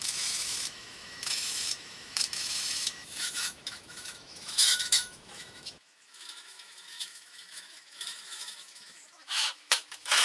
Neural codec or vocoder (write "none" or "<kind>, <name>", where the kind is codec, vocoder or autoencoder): autoencoder, DAC-VAE